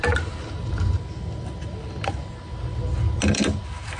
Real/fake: real